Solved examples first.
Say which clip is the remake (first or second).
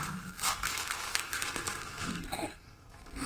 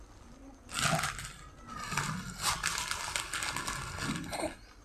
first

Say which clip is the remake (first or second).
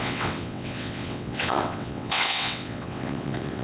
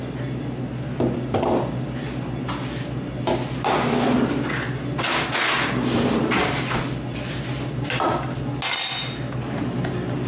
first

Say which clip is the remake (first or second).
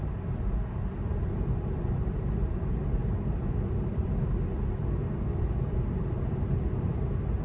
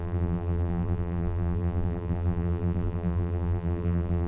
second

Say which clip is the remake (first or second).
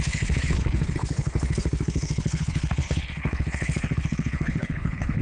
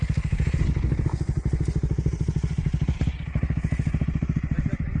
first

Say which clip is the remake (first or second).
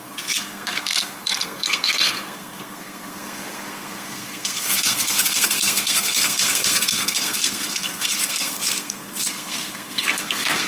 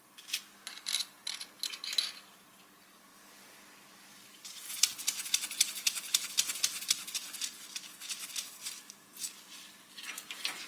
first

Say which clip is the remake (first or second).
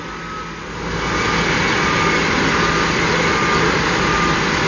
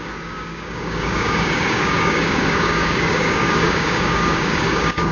second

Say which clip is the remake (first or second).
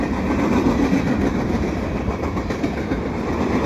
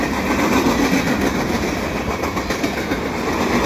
first